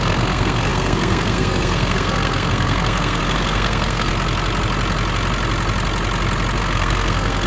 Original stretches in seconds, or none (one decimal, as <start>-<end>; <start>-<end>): 4.1-6.6